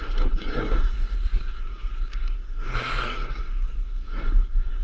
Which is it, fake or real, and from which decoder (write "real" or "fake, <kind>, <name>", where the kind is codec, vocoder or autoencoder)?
fake, codec, SNAC